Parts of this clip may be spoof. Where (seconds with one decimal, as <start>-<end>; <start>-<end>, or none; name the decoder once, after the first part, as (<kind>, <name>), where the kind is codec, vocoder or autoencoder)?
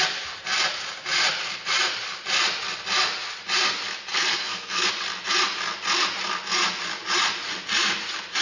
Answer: 4.1-4.9 (codec, SNAC)